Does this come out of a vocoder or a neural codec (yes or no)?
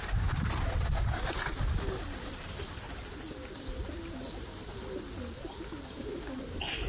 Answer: no